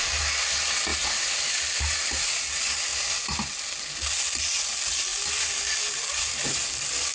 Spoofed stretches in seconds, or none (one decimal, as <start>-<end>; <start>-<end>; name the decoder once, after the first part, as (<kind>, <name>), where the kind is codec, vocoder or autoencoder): none